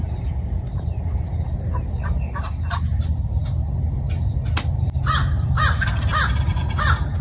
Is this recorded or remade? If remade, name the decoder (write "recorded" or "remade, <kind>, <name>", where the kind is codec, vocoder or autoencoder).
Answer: recorded